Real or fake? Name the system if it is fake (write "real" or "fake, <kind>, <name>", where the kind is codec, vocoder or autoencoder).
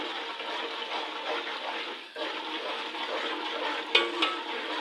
real